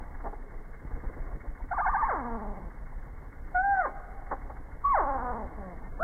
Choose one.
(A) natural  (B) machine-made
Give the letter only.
A